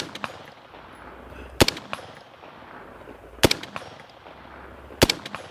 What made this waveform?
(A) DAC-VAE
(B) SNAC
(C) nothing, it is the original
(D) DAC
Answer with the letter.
C